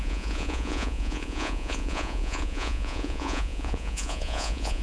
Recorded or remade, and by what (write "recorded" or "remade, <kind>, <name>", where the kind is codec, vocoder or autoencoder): remade, vocoder, Vocos